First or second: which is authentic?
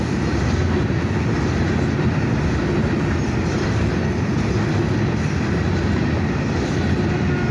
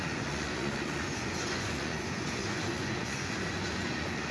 first